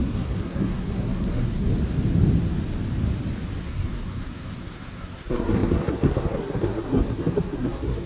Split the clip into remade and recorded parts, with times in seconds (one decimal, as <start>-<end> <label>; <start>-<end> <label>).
0.0-1.7 remade; 1.7-3.6 recorded; 3.6-8.1 remade